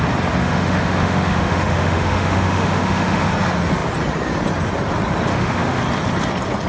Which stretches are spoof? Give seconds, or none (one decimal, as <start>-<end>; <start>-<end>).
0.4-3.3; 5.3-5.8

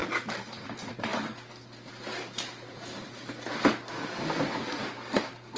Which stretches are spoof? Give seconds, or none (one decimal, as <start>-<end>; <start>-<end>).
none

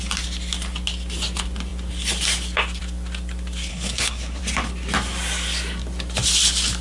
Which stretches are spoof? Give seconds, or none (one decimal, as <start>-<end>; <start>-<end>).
3.7-4.4